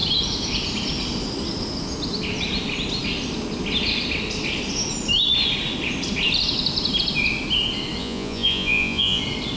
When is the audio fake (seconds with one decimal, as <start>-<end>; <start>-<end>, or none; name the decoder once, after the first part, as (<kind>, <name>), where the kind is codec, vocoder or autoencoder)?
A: 8.0-9.2 (vocoder, Vocos)